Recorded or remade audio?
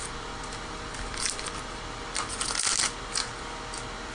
recorded